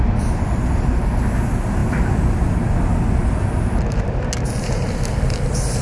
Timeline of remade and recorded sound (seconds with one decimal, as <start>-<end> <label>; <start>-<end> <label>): 0.0-5.8 recorded